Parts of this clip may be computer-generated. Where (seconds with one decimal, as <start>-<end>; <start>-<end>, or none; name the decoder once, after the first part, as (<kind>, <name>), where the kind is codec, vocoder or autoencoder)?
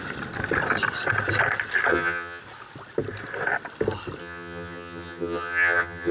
1.9-2.4 (vocoder, HiFi-GAN); 4.2-6.1